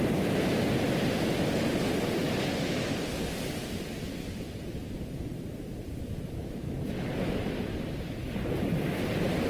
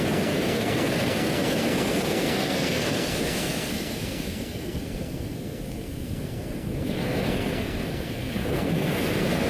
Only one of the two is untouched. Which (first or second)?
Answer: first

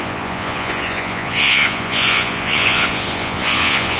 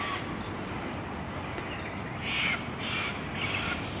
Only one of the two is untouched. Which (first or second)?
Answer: second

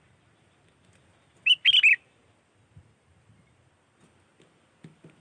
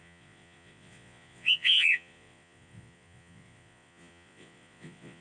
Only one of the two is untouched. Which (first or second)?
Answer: first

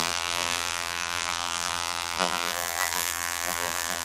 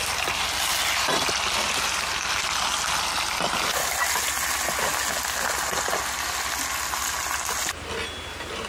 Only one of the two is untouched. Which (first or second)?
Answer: second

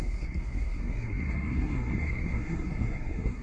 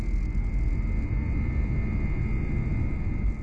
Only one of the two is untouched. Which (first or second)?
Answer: second